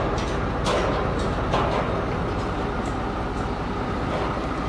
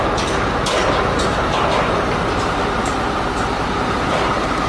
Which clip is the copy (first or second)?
second